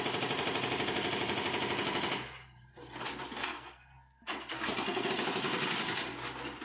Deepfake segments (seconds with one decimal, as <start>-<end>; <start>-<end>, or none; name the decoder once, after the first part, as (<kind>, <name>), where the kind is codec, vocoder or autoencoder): 3.4-5.1 (codec, SNAC)

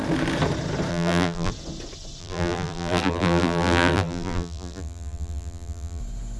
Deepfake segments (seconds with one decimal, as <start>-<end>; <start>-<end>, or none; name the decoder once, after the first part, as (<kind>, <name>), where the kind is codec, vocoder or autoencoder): 0.9-1.5 (vocoder, BigVGAN v2); 2.2-6.0

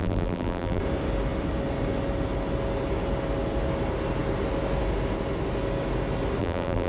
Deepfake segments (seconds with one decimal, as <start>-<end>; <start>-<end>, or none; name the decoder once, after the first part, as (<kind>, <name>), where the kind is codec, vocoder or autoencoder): 0.0-0.8 (vocoder, BigVGAN v2); 6.4-6.9

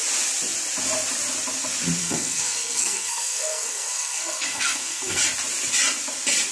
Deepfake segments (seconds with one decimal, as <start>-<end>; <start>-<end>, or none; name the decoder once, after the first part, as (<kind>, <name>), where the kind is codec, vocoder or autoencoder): 2.0-5.2 (codec, SNAC)